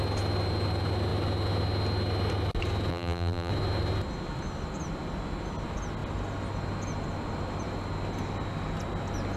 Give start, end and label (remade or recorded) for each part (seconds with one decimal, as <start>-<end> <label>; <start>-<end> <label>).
0.0-2.9 recorded; 2.9-3.5 remade; 3.5-9.4 recorded